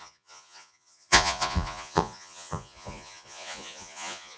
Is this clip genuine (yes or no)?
no